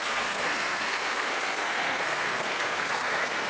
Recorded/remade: remade